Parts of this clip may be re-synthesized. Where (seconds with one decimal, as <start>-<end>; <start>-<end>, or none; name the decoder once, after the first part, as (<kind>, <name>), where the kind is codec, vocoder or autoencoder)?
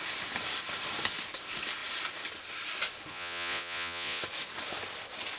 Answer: 3.1-4.2 (vocoder, Vocos)